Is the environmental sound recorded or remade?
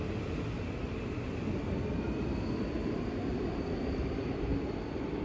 recorded